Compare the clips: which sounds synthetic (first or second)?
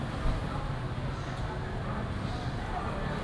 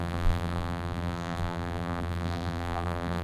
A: second